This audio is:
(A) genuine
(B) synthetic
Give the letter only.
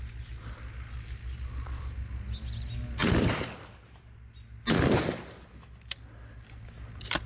A